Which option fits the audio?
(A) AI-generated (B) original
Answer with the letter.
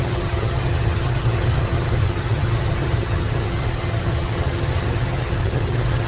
A